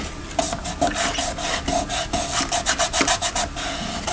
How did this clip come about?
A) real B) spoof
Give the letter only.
A